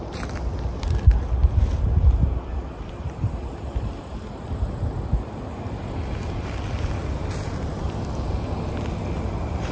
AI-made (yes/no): no